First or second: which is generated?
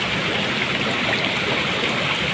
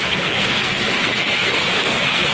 second